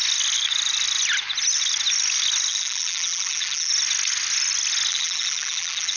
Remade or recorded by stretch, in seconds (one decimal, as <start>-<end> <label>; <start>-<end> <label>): 0.0-2.5 recorded; 2.5-3.7 remade; 3.7-4.9 recorded; 4.9-6.0 remade